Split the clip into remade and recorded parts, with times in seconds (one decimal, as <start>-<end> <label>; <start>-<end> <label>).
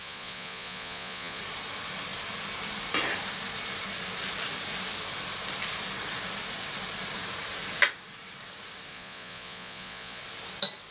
0.0-1.4 remade; 1.4-8.9 recorded; 8.9-10.2 remade; 10.2-10.9 recorded